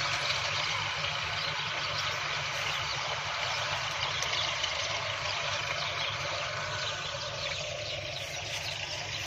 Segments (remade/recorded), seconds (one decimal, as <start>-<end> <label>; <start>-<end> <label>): 0.0-2.9 recorded; 2.9-7.1 remade; 7.1-9.3 recorded